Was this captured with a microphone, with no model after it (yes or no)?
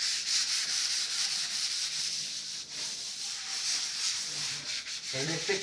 no